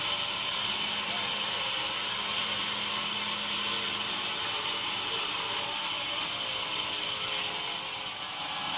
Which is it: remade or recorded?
recorded